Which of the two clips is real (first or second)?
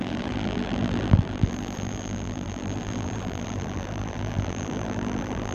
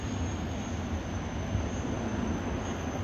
second